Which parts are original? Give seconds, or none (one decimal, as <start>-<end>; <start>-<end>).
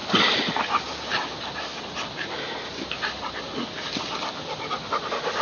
0.0-5.4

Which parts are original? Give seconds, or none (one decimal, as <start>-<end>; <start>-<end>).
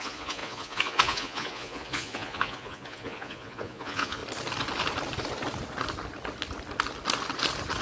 4.2-7.8